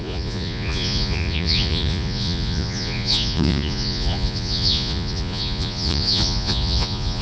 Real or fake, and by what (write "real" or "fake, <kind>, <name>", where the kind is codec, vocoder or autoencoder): fake, vocoder, Vocos